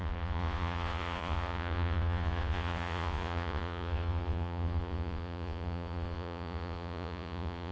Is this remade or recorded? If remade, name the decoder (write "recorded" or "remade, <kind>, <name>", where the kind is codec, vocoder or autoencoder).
remade, vocoder, Vocos